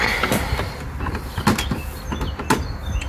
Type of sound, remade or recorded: recorded